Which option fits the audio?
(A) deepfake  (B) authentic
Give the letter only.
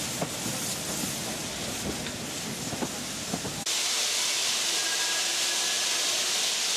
B